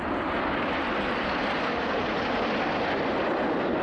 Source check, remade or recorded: recorded